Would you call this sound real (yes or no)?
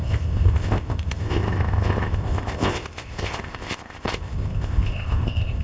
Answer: no